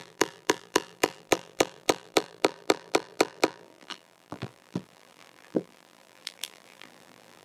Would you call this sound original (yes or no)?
no